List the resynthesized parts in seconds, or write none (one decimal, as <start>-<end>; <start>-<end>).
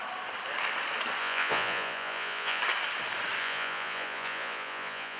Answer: 1.2-2.6; 3.4-5.2